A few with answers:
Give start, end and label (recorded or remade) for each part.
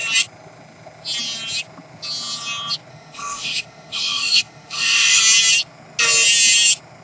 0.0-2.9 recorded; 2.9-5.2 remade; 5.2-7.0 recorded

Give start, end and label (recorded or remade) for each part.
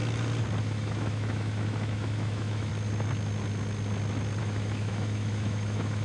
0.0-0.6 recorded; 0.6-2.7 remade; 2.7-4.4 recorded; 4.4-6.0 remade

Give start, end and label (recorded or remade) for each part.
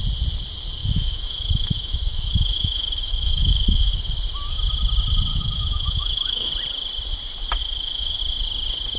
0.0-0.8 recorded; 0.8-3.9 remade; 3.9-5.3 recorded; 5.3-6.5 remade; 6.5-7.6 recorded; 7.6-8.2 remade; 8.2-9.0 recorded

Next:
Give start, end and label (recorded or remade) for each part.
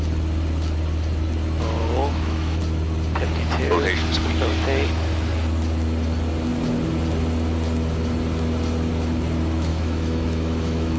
0.0-2.0 recorded; 2.0-2.6 remade; 2.6-9.7 recorded; 9.7-11.0 remade